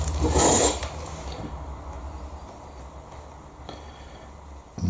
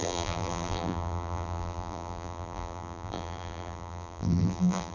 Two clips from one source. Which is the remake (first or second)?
second